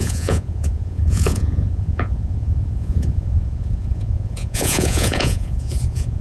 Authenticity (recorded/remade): remade